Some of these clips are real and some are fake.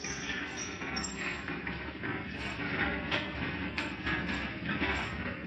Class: fake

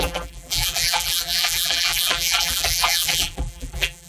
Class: fake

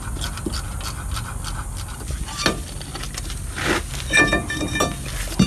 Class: real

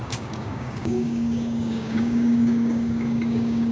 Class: fake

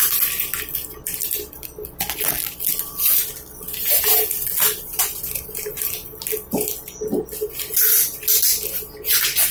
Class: real